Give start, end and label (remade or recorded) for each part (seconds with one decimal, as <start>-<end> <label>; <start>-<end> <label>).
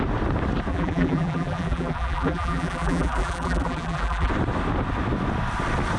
0.0-0.7 recorded; 0.7-4.3 remade; 4.3-6.0 recorded